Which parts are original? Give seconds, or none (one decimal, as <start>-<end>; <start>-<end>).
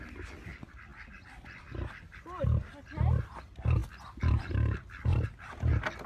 0.0-6.1